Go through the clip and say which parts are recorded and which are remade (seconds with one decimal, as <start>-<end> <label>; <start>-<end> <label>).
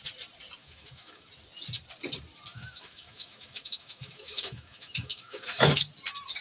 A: 0.0-0.6 recorded; 0.6-1.3 remade; 1.3-2.5 recorded; 2.5-5.8 remade; 5.8-6.4 recorded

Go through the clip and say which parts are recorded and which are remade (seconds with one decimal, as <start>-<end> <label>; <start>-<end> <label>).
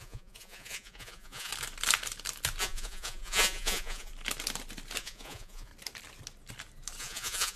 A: 0.0-1.5 remade; 1.5-2.6 recorded; 2.6-4.1 remade; 4.1-5.0 recorded; 5.0-5.7 remade; 5.7-7.0 recorded; 7.0-7.6 remade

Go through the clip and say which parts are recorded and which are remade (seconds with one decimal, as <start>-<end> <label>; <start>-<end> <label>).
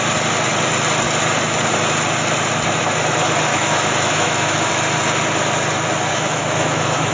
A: 0.0-3.5 recorded; 3.5-4.7 remade; 4.7-6.1 recorded; 6.1-7.1 remade